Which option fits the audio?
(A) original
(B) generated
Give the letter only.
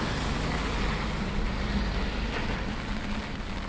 A